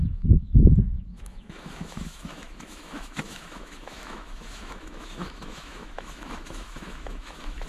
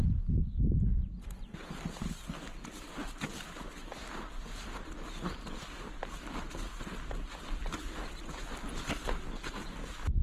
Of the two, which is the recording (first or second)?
second